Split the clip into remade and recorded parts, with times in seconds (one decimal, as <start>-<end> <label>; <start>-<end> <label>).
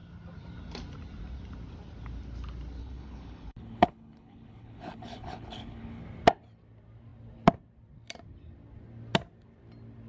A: 0.0-2.8 recorded; 2.8-6.0 remade; 6.0-10.1 recorded